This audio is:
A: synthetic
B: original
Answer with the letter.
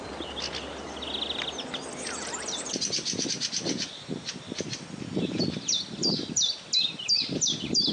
B